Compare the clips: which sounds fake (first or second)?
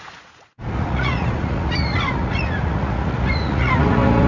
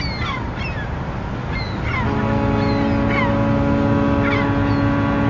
first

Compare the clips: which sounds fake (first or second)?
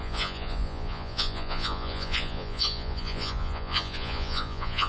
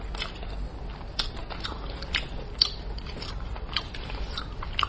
first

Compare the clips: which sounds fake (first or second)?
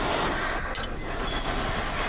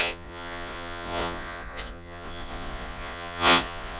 second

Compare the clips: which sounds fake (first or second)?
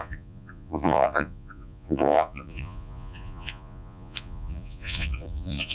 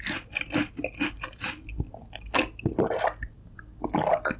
first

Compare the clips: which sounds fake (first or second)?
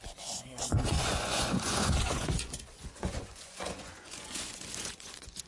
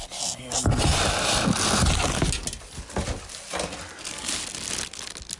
first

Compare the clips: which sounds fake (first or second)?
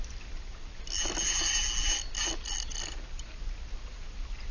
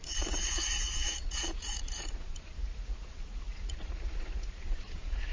second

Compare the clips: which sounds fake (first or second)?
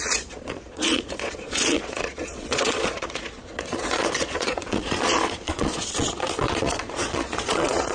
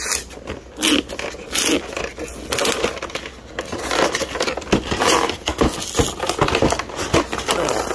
first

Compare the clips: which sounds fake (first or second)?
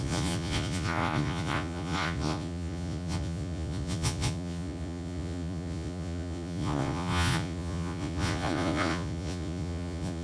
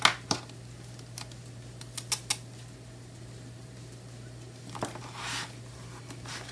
first